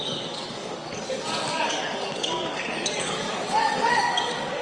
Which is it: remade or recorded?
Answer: remade